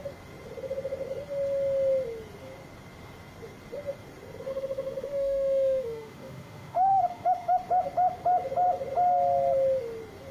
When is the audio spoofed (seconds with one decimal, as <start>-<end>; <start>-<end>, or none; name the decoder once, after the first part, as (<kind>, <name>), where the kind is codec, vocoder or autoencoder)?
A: 4.5-7.6 (autoencoder, DAC-VAE)